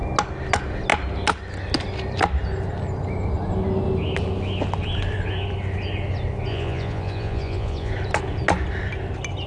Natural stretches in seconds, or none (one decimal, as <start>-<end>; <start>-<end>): 0.0-6.5; 7.9-9.5